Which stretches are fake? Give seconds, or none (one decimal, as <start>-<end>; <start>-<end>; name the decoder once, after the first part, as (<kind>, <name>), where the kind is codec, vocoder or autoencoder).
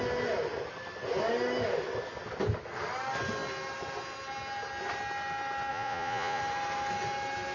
5.7-6.4 (vocoder, Vocos)